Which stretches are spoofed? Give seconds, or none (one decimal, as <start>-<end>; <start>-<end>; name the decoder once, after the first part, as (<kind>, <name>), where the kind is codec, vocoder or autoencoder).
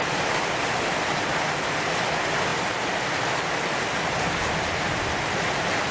0.0-5.9 (vocoder, BigVGAN v2)